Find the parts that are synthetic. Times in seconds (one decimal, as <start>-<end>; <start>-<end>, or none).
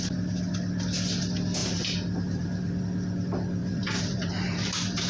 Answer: 1.6-2.8; 3.6-5.1